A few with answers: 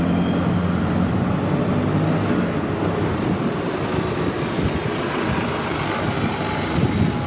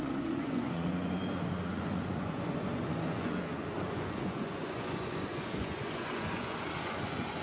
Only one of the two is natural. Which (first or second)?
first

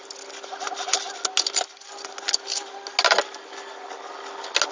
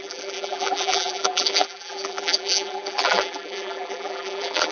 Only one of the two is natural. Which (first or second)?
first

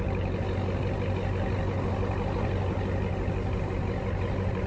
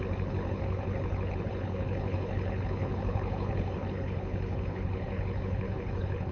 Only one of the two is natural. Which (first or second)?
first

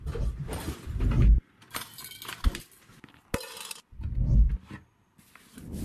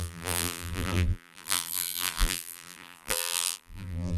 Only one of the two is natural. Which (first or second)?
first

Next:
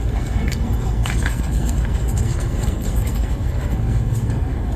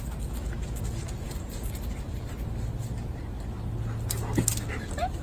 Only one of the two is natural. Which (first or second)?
second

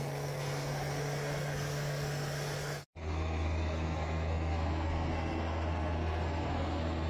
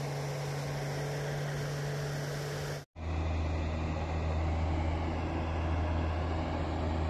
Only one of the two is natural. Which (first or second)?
second